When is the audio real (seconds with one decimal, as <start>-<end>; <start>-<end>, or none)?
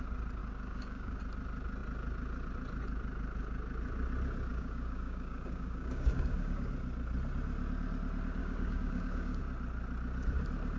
0.0-0.4; 1.2-4.5; 6.7-8.4; 9.4-10.8